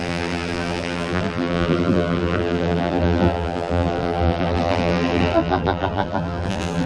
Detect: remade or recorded remade